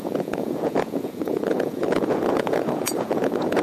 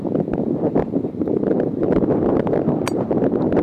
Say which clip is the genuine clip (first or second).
second